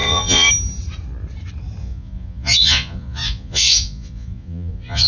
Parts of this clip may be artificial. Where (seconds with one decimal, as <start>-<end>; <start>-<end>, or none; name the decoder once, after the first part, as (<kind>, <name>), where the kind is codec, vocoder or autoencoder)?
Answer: 0.0-0.5 (vocoder, Vocos); 1.8-5.1